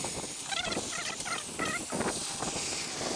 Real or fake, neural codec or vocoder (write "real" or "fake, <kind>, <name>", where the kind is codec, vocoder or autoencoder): real